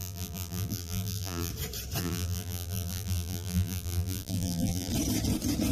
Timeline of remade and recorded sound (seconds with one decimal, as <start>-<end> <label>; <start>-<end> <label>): 0.0-1.5 remade; 1.5-2.0 recorded; 2.0-4.9 remade; 4.9-5.7 recorded